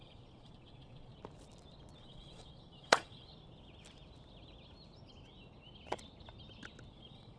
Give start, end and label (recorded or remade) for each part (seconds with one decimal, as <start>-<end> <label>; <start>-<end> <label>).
0.0-1.1 remade; 1.1-2.0 recorded; 2.0-3.3 remade; 3.3-6.9 recorded; 6.9-7.4 remade